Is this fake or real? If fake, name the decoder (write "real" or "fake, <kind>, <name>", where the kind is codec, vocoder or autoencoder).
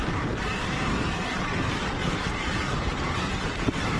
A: fake, vocoder, BigVGAN v2